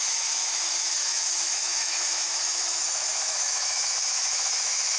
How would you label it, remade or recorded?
remade